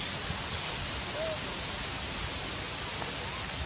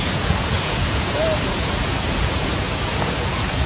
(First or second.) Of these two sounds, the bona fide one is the first